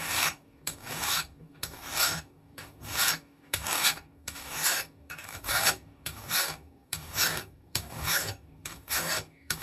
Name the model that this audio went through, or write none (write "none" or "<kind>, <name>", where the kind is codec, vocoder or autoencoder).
codec, DAC